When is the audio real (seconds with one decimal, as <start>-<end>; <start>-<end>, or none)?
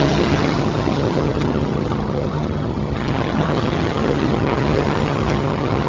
none